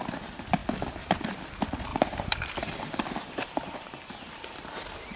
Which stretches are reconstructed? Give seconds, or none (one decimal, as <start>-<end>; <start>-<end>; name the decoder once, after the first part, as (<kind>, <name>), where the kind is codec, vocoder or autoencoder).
1.9-2.5 (vocoder, BigVGAN v2); 3.4-3.9